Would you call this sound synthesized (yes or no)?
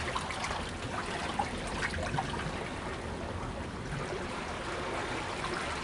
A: no